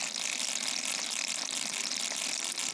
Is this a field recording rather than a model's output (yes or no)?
no